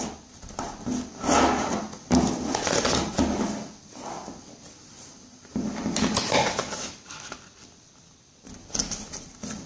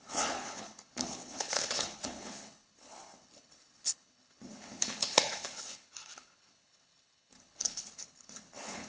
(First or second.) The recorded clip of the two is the first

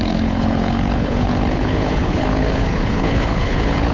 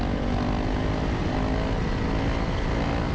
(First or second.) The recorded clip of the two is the second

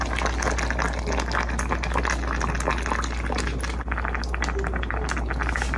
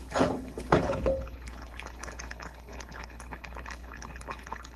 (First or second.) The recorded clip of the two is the first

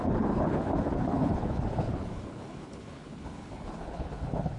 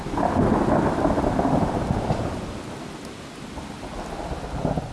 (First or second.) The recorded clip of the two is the second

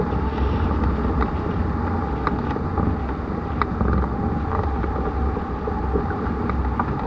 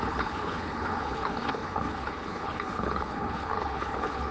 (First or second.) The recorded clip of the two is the first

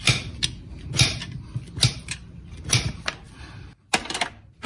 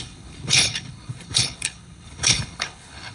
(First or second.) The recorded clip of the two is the first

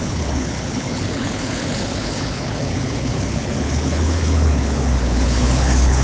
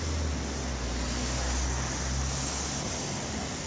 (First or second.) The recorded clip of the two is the second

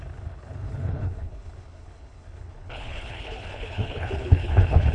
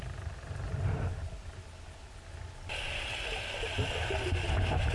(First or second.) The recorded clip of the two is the second